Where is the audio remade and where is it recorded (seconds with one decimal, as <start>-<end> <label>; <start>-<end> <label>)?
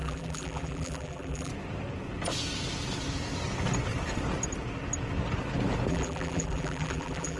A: 0.0-1.5 remade; 1.5-5.9 recorded; 5.9-7.4 remade